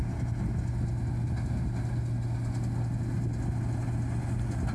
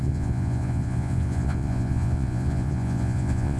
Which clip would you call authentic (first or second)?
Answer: first